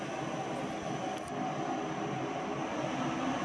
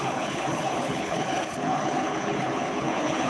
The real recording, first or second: first